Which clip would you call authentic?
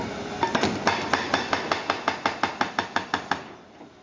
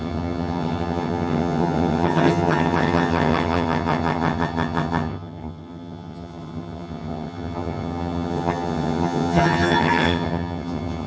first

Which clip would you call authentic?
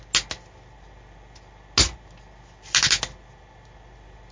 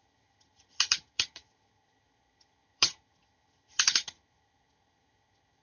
first